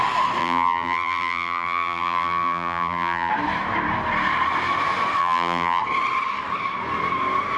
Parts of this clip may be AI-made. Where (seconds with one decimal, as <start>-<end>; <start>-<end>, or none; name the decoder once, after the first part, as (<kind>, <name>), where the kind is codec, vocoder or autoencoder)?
0.4-3.3 (vocoder, BigVGAN v2); 5.2-5.8